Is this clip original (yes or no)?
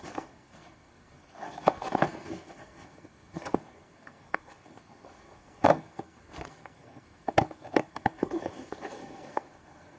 no